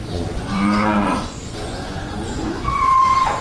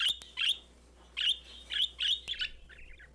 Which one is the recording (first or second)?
second